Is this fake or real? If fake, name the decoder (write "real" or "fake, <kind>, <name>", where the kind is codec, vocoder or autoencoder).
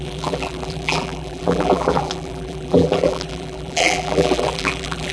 fake, vocoder, BigVGAN v2